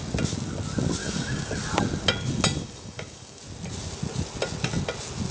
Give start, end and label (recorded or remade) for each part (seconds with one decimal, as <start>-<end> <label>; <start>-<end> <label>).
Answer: 0.0-1.0 recorded; 1.0-1.5 remade; 1.5-2.6 recorded; 2.6-3.4 remade; 3.4-5.3 recorded